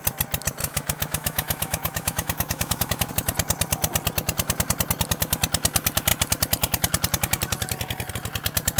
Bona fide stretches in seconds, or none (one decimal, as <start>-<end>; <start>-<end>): 0.0-0.6; 3.1-8.8